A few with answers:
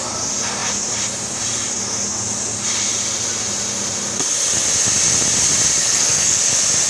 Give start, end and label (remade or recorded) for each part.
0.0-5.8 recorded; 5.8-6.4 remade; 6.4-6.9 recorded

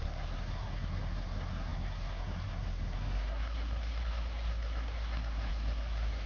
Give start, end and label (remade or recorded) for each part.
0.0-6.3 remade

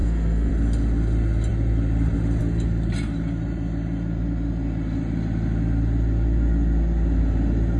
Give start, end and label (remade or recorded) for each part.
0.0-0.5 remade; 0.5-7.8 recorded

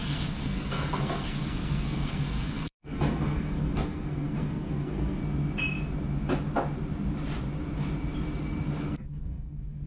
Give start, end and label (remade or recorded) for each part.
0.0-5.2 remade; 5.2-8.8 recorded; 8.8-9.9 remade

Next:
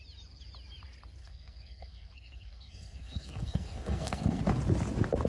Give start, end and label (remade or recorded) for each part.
0.0-1.2 recorded; 1.2-4.4 remade; 4.4-5.3 recorded

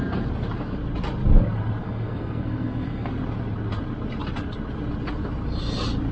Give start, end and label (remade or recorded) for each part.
0.0-1.8 recorded; 1.8-3.1 remade; 3.1-6.1 recorded

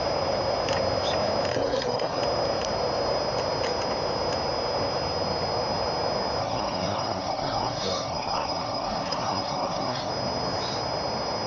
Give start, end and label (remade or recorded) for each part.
0.0-1.5 recorded; 1.5-2.2 remade; 2.2-6.4 recorded; 6.4-10.1 remade; 10.1-11.5 recorded

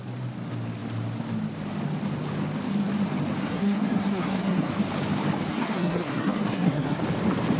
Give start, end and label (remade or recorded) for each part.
0.0-3.4 recorded; 3.4-4.7 remade; 4.7-5.5 recorded; 5.5-7.0 remade; 7.0-7.6 recorded